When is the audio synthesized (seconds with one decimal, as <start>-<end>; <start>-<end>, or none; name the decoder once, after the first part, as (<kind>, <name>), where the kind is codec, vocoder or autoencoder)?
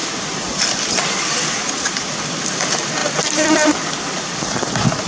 0.0-3.0 (vocoder, BigVGAN v2); 3.9-5.1